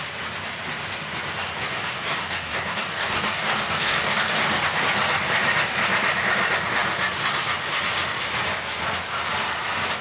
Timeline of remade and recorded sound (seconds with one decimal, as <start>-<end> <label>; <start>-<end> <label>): 0.0-1.7 recorded; 1.7-4.6 remade; 4.6-10.0 recorded